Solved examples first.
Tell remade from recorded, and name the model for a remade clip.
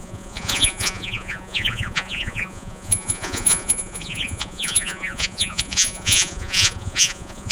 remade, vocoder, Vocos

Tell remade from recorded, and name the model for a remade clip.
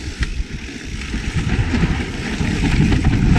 recorded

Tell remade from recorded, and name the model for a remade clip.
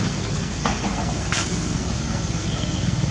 remade, codec, SNAC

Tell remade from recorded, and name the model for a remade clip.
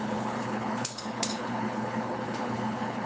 remade, codec, HILCodec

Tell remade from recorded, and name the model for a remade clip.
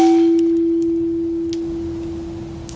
recorded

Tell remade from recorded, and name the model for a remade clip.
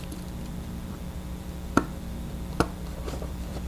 remade, vocoder, BigVGAN v2